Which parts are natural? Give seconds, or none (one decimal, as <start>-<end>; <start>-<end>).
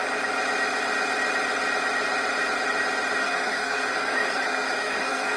0.0-3.2